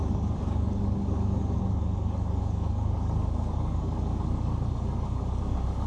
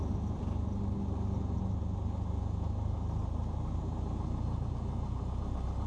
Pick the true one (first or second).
second